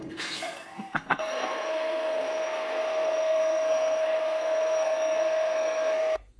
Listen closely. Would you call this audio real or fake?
fake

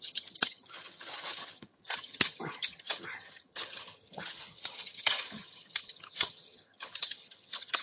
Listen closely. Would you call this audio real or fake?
fake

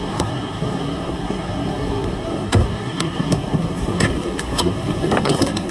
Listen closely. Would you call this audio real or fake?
fake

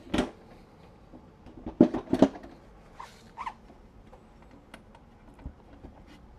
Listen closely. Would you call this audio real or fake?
real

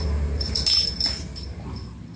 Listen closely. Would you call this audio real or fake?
real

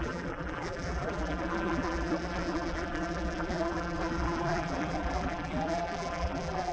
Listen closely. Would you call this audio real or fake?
fake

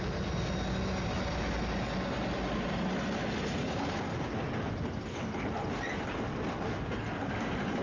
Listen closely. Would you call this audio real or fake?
real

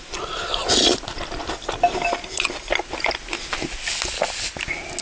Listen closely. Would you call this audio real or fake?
real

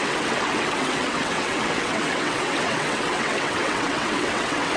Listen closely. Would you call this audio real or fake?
fake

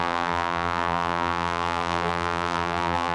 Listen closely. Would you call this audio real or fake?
fake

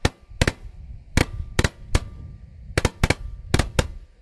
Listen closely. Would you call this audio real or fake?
real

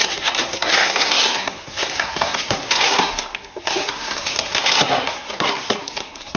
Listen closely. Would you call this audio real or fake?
fake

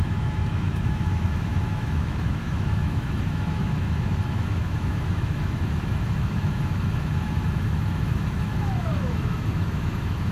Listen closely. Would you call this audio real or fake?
fake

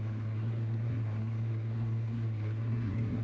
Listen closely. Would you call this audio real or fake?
fake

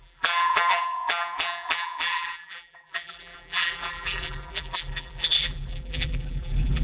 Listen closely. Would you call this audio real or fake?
fake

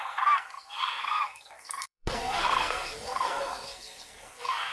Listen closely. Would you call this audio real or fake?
fake